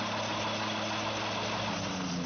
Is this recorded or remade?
recorded